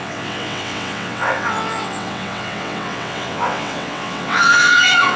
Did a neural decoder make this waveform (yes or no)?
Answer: yes